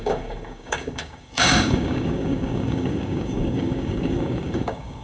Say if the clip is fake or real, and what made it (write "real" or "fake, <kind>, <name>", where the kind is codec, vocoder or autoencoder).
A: fake, codec, DAC